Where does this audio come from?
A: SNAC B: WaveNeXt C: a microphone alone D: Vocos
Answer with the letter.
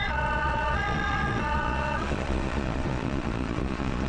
D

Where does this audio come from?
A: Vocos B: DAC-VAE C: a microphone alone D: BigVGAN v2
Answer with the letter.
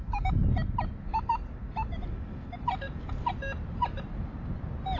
C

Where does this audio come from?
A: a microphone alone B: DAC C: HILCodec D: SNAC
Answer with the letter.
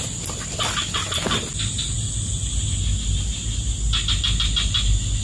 A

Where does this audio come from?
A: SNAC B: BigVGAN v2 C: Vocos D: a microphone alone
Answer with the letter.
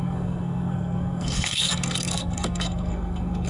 A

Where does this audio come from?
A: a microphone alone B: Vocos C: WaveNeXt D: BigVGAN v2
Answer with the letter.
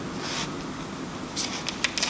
A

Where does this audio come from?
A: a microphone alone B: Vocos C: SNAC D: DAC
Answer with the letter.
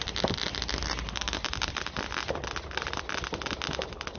A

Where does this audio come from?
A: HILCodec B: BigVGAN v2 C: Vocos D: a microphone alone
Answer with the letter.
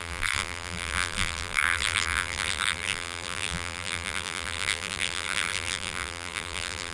B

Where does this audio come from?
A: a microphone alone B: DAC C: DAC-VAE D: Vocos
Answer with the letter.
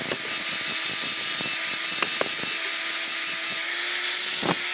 A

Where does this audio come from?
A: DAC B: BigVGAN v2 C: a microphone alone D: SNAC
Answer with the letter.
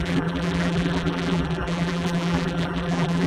B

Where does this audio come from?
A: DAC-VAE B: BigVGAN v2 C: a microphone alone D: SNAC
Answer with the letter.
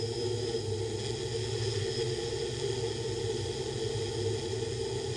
C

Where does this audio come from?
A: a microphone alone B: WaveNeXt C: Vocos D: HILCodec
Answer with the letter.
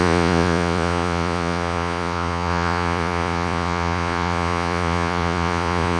C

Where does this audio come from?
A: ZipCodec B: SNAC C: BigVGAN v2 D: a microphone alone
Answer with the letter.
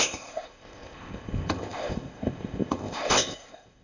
A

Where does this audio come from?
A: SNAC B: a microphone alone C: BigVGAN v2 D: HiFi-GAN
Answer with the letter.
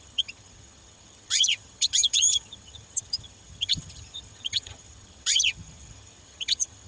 D